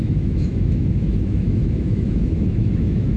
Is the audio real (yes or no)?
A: no